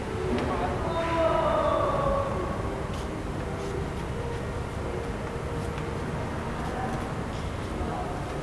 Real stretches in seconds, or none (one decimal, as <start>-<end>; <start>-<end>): 0.0-8.4